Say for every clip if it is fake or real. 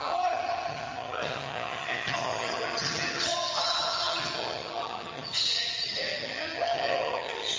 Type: fake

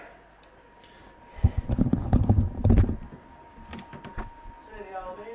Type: real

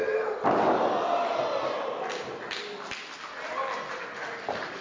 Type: real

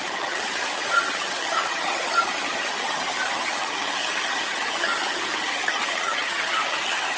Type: fake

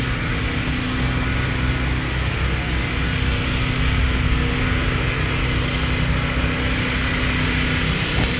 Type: real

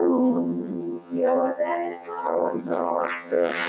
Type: fake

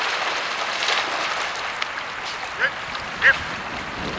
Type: real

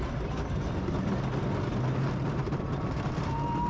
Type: real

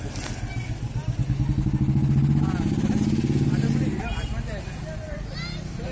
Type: real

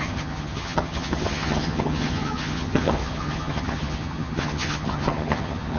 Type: fake